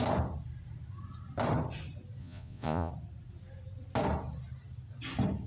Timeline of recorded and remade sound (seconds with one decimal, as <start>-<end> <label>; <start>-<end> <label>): 0.0-2.2 recorded; 2.2-2.9 remade; 2.9-5.5 recorded

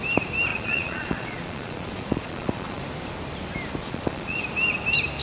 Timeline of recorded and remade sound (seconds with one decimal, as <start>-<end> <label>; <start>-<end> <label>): 0.0-0.5 recorded; 0.5-2.8 remade; 2.8-3.8 recorded; 3.8-4.4 remade; 4.4-5.2 recorded

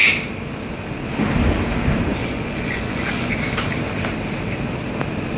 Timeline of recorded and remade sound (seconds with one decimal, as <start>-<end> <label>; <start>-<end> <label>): 0.0-2.2 recorded; 2.2-3.3 remade; 3.3-5.4 recorded

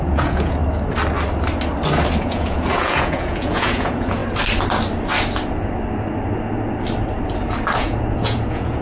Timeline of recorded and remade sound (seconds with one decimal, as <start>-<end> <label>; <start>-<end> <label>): 0.0-0.6 remade; 0.6-2.2 recorded; 2.2-4.2 remade; 4.2-7.8 recorded; 7.8-8.8 remade

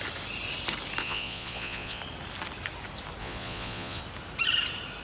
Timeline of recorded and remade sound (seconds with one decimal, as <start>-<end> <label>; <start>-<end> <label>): 0.0-1.0 recorded; 1.0-2.0 remade; 2.0-3.2 recorded; 3.2-4.0 remade; 4.0-5.0 recorded

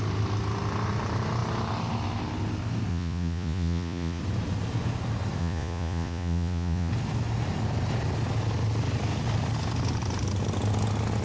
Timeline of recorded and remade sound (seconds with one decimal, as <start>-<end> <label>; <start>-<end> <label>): 0.0-2.9 recorded; 2.9-4.2 remade; 4.2-5.4 recorded; 5.4-6.9 remade; 6.9-11.2 recorded

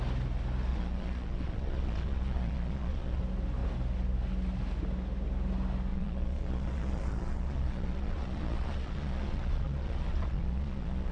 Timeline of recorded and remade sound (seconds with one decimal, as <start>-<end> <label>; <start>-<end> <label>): 0.0-0.7 recorded; 0.7-3.2 remade; 3.2-5.9 recorded; 5.9-11.1 remade